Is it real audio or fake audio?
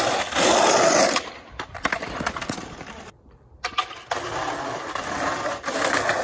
fake